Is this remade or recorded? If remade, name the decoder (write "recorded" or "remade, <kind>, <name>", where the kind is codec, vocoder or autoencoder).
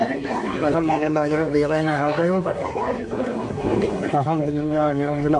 remade, codec, SNAC